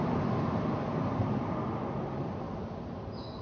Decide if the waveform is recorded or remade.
recorded